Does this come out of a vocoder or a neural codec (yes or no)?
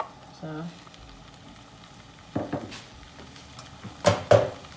no